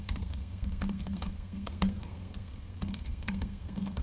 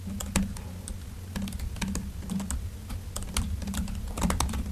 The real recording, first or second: second